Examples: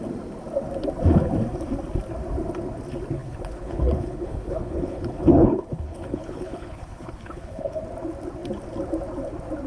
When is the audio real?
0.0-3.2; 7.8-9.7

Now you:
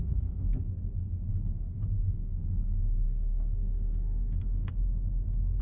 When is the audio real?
0.5-1.3; 4.7-5.6